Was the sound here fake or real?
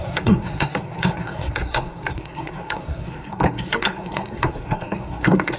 fake